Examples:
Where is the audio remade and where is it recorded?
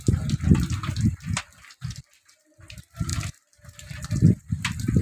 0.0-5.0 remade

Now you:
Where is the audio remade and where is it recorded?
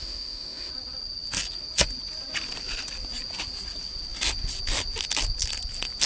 0.0-0.7 remade; 0.7-6.1 recorded